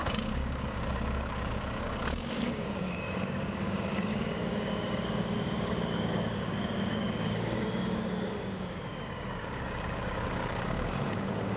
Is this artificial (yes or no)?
yes